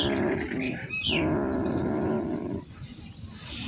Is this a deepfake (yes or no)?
no